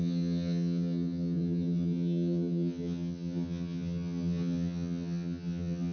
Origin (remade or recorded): remade